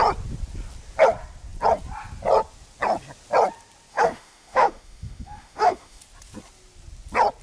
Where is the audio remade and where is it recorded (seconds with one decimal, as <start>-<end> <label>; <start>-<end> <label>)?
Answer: 0.0-3.9 recorded; 3.9-6.0 remade; 6.0-7.4 recorded